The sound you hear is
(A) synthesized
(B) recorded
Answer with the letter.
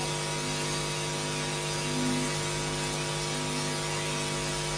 B